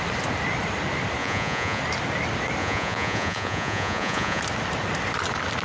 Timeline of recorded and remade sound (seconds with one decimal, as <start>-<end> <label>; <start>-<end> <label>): 0.0-1.2 recorded; 1.2-1.8 remade; 1.8-2.6 recorded; 2.6-4.4 remade; 4.4-5.6 recorded